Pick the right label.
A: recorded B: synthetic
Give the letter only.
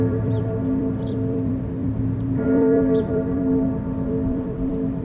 B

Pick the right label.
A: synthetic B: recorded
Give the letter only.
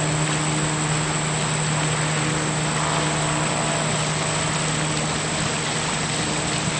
B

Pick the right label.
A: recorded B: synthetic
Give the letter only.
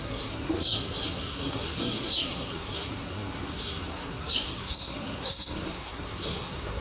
B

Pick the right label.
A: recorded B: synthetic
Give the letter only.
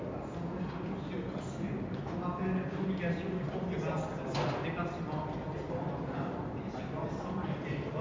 A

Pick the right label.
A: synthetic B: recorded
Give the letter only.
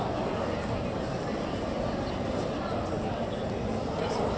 B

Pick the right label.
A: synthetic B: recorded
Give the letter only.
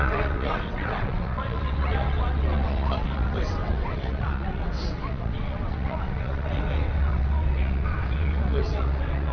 A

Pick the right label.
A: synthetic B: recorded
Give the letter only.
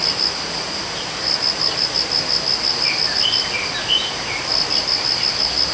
B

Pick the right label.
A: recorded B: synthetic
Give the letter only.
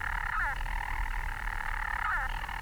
A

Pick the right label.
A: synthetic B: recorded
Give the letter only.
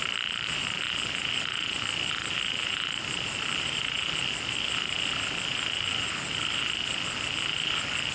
B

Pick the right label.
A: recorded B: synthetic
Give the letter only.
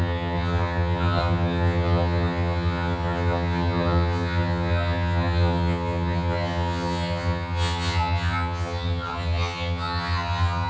B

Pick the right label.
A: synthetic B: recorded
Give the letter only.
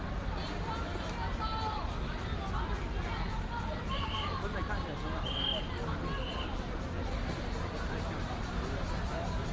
B